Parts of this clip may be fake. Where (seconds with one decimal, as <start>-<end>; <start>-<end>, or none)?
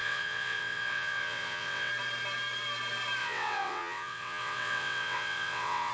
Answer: 0.0-1.9; 3.2-5.9